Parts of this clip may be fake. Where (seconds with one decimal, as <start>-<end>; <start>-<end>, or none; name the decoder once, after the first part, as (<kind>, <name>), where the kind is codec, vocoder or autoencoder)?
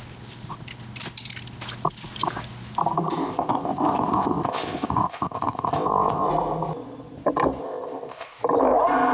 3.2-6.3 (codec, ZipCodec); 7.6-8.4